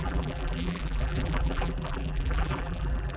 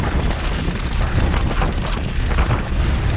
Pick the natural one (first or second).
second